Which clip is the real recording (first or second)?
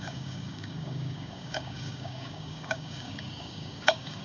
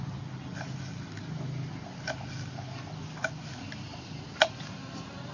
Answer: second